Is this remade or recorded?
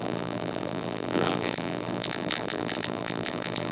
remade